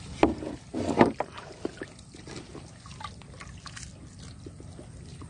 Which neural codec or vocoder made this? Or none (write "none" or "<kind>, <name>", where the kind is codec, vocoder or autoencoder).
none